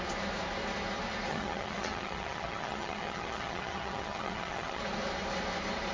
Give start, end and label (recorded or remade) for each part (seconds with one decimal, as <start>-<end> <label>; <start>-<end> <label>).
0.0-1.3 recorded; 1.3-4.8 remade; 4.8-5.9 recorded